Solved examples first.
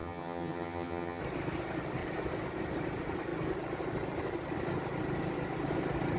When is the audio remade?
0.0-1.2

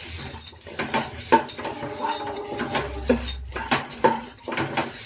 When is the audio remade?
none

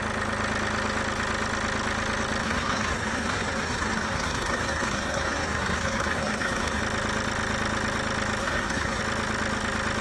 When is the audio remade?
2.4-6.8; 8.4-9.0

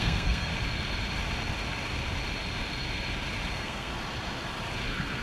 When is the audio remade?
0.0-0.5; 3.5-3.9